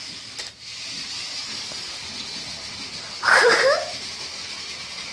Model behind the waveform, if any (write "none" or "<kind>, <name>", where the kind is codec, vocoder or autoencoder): none